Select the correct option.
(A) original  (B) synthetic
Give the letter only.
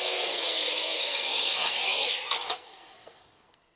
B